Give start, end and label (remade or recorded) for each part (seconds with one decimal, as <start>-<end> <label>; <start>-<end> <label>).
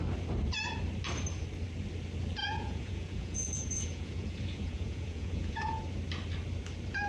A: 0.0-2.4 recorded; 2.4-5.8 remade; 5.8-7.1 recorded